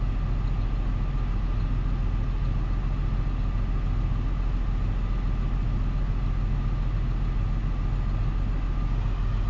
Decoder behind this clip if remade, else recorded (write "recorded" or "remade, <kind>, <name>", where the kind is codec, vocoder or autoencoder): recorded